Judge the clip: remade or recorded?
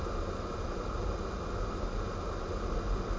recorded